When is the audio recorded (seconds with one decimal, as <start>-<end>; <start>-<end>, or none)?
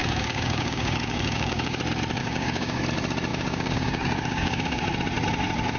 1.8-2.2; 2.8-3.3; 4.8-5.8